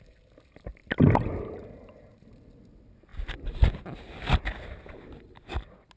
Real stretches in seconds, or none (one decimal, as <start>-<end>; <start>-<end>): 0.0-6.0